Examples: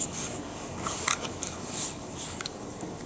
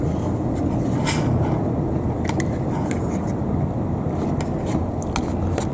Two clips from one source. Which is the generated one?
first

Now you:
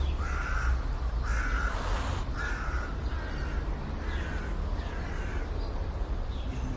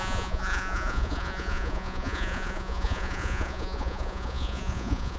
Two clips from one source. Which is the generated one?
second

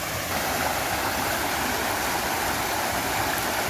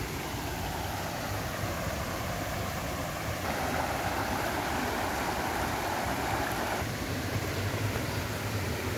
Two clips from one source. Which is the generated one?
second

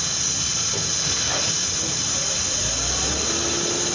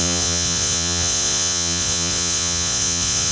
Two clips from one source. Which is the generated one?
second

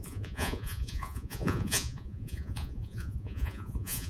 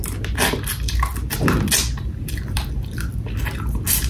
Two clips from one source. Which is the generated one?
first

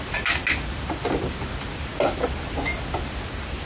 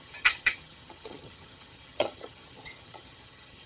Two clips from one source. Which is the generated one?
second